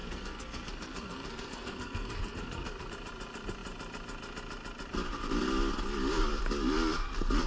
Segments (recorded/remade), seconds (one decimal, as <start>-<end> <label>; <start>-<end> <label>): 0.0-2.9 remade; 2.9-7.5 recorded